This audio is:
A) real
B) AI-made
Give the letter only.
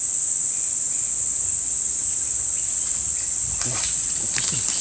A